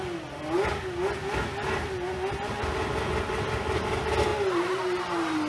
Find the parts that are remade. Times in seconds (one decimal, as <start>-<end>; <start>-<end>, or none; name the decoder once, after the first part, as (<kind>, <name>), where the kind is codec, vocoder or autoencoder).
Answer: none